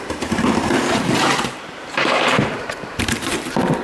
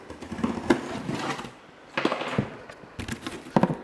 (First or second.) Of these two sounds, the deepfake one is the first